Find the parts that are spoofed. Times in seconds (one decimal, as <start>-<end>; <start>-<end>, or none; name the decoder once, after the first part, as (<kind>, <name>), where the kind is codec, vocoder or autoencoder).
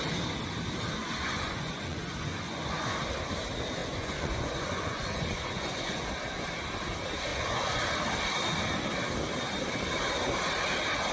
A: 1.0-3.0 (vocoder, Vocos); 3.8-6.0; 7.3-8.0